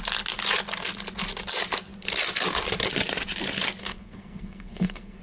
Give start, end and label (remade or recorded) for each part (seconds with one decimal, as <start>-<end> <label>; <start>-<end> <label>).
0.0-3.8 recorded; 3.8-5.2 remade